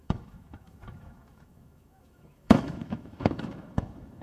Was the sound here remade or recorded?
remade